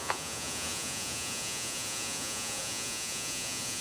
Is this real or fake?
fake